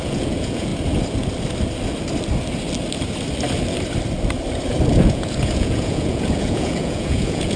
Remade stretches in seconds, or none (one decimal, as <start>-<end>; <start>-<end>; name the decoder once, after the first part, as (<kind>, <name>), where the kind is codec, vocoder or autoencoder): 0.0-0.7 (vocoder, Vocos); 4.9-7.6